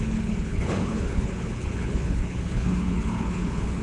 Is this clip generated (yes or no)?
yes